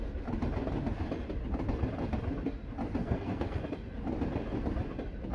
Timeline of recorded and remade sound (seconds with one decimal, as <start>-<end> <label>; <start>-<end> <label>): 0.0-3.0 recorded; 3.0-3.6 remade; 3.6-5.3 recorded